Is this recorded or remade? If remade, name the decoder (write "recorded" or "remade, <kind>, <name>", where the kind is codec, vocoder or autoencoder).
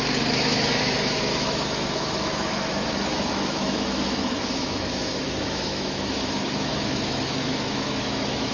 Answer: remade, autoencoder, DAC-VAE